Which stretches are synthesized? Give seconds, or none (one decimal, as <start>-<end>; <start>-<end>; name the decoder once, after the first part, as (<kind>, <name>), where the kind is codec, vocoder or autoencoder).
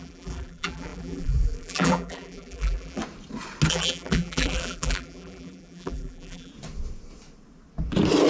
0.0-3.0 (vocoder, BigVGAN v2); 3.7-6.5